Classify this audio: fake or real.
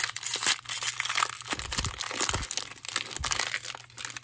real